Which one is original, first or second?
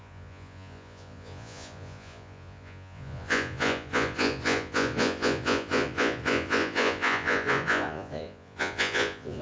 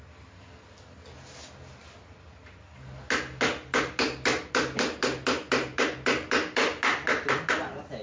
second